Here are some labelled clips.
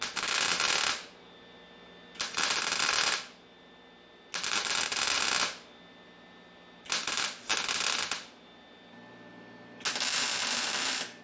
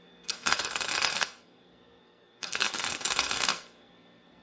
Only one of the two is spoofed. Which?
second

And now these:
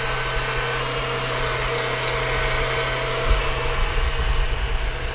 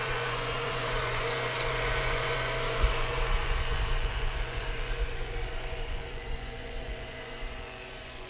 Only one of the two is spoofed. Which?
second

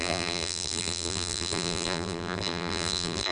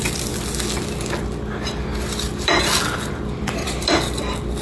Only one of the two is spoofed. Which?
first